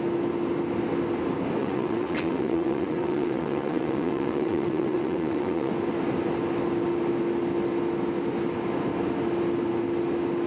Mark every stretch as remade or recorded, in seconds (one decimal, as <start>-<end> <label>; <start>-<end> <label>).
0.0-1.6 recorded; 1.6-5.7 remade; 5.7-10.5 recorded